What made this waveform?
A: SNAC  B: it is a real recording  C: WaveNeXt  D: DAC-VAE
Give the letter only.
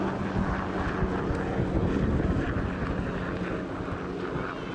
B